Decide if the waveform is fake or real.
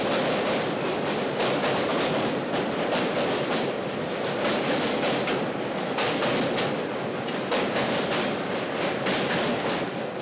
real